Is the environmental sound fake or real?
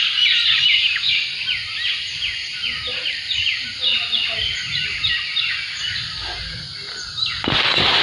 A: real